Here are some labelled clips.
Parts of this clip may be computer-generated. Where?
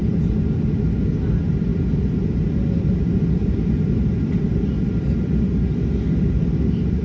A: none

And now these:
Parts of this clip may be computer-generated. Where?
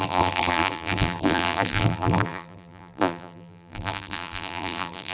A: 0.0-5.1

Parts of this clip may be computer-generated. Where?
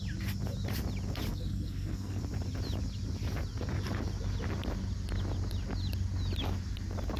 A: 1.3-2.2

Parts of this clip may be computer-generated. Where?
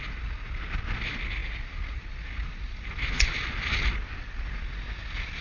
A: none